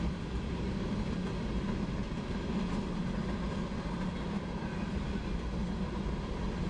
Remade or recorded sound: recorded